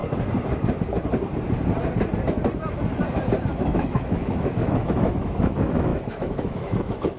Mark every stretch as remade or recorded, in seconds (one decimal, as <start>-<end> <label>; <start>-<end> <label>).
0.0-3.7 recorded; 3.7-7.2 remade